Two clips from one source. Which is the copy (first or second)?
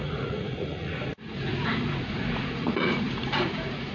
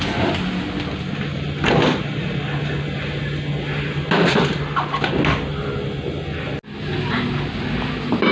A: first